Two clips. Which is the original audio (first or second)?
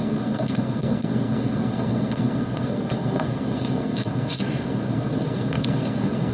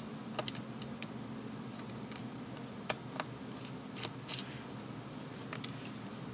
second